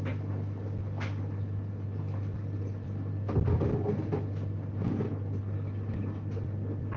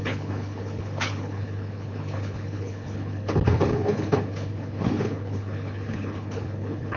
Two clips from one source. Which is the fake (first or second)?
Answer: second